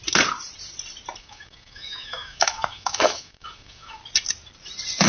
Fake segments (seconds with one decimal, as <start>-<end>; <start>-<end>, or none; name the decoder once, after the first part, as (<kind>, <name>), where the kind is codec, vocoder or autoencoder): 1.2-4.0 (autoencoder, DAC-VAE)